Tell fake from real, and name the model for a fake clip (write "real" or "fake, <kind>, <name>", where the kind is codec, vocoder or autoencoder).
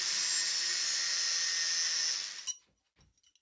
real